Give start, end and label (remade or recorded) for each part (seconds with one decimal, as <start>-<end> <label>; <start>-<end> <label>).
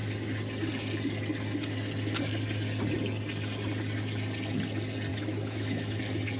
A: 0.0-5.1 recorded; 5.1-6.0 remade; 6.0-6.4 recorded